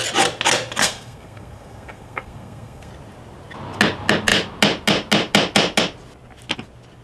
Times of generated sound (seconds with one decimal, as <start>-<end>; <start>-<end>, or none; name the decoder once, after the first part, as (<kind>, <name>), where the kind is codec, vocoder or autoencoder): 0.8-2.9 (codec, SNAC)